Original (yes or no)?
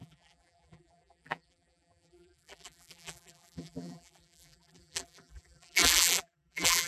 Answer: no